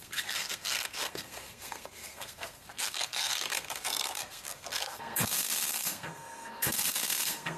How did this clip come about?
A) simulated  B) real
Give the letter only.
A